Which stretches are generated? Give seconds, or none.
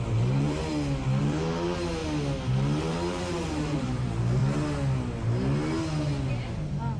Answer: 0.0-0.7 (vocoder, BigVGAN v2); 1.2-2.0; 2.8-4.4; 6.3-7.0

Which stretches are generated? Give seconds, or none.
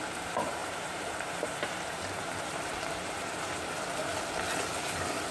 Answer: 0.0-4.1 (vocoder, BigVGAN v2)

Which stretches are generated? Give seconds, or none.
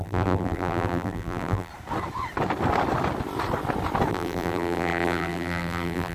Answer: 0.0-1.7 (vocoder, BigVGAN v2); 4.1-6.1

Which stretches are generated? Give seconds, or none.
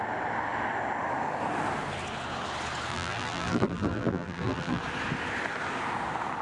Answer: 2.9-4.8 (vocoder, BigVGAN v2)